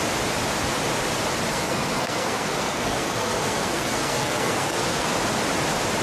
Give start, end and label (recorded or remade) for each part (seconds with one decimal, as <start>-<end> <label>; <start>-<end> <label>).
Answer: 0.0-1.5 recorded; 1.5-5.1 remade; 5.1-6.0 recorded